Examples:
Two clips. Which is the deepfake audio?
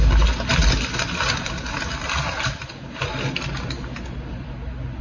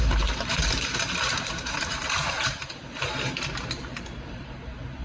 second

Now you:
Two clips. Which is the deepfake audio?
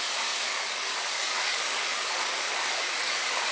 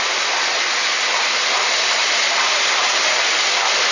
first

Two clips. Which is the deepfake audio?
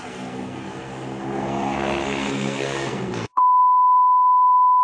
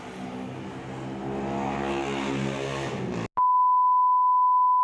first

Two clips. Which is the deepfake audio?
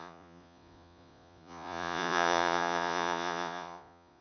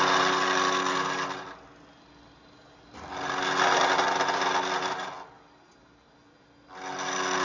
first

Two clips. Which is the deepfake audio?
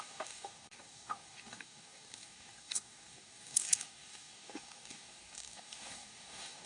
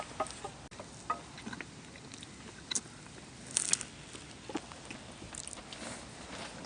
first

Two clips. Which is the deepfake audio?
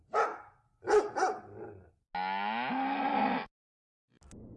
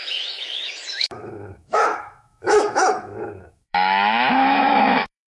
second